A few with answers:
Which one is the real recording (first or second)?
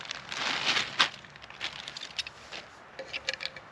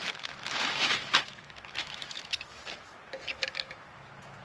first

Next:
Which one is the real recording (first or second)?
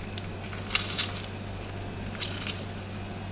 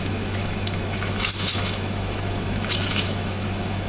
first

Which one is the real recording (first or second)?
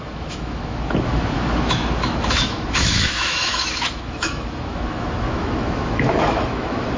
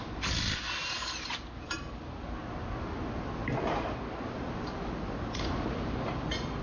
second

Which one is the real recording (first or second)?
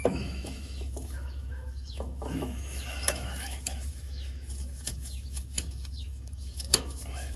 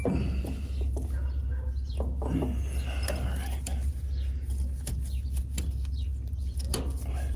second